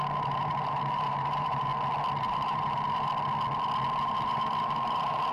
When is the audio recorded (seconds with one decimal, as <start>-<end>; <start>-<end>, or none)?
1.7-2.2; 3.1-4.0

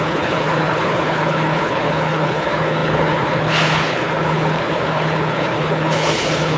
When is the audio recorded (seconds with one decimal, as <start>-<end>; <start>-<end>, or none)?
none

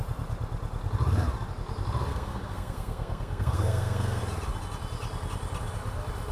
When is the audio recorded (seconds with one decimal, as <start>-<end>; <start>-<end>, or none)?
0.0-2.1; 4.2-6.3